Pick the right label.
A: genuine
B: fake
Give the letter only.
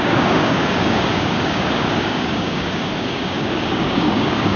B